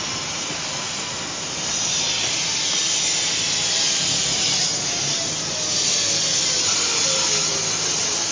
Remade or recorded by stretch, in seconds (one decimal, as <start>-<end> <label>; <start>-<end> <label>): 0.0-4.6 recorded; 4.6-5.5 remade; 5.5-8.3 recorded